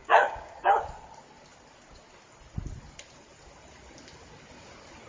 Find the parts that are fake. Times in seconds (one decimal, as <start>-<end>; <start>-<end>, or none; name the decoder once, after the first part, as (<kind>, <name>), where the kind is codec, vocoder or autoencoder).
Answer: 0.0-0.8 (codec, DAC)